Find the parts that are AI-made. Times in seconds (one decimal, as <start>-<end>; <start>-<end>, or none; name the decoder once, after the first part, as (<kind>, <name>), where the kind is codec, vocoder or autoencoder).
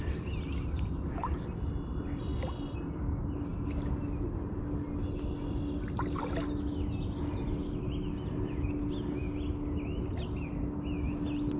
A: none